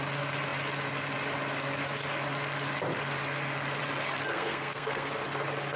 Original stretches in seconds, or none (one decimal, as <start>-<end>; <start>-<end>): 0.0-4.3; 5.1-5.8